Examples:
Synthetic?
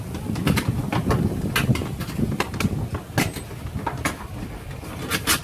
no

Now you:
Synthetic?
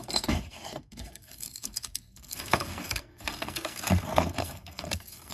yes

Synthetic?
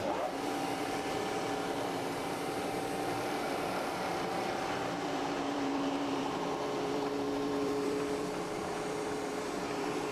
yes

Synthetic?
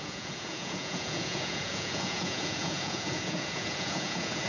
yes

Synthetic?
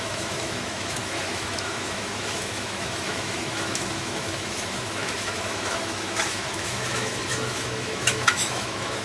yes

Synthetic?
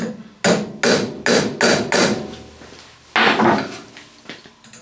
no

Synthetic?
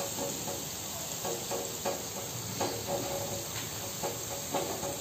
no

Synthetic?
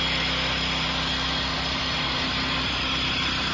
no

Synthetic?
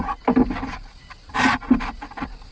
yes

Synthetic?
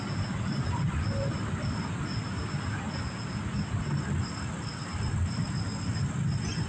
no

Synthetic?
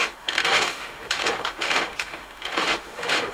yes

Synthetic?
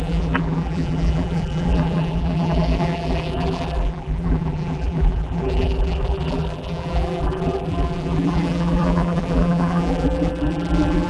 yes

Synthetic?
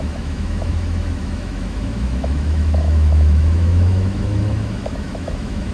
yes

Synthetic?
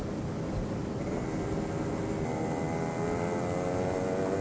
no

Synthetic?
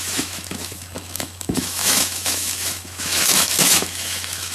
yes